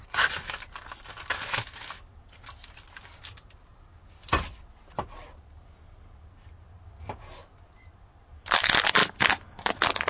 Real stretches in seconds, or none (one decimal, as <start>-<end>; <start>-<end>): 0.0-10.1